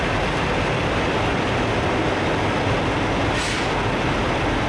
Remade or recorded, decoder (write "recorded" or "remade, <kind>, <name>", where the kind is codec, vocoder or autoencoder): remade, vocoder, BigVGAN v2